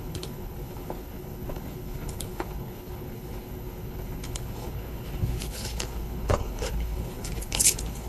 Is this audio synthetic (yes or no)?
yes